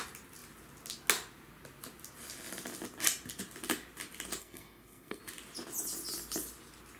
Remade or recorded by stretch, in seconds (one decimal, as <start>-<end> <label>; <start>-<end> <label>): 0.0-4.4 recorded; 4.4-5.2 remade; 5.2-7.0 recorded